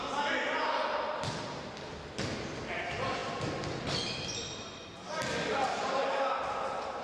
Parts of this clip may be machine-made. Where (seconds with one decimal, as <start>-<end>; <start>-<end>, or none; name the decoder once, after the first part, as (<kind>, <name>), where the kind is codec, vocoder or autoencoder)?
5.6-6.1 (vocoder, BigVGAN v2)